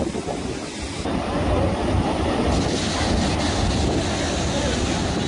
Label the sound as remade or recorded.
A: recorded